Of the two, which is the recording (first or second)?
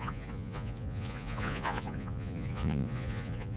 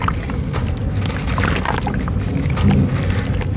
second